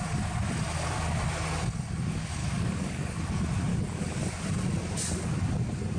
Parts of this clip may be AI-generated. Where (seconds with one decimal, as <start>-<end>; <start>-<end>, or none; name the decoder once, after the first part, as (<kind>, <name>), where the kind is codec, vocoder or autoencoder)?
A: 2.4-3.3 (codec, DAC); 3.7-4.4